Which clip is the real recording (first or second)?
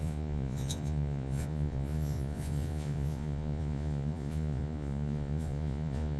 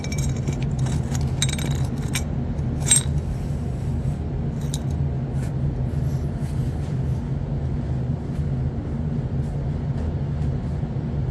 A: second